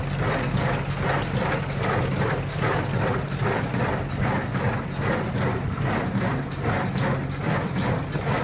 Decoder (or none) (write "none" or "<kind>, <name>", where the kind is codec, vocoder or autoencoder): none